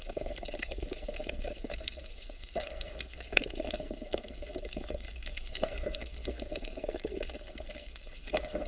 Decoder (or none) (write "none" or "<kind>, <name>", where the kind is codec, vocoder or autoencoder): codec, SNAC